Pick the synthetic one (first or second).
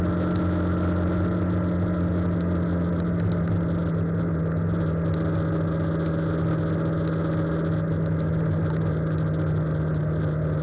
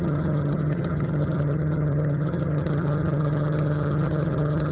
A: second